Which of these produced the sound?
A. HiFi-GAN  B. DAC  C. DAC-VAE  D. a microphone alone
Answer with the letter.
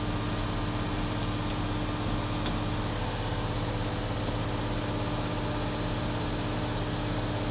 D